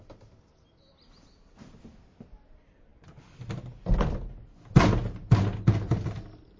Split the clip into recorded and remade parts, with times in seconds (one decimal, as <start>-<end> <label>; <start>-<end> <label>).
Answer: 0.0-6.6 recorded